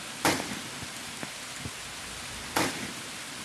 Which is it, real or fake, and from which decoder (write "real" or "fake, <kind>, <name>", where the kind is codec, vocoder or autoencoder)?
real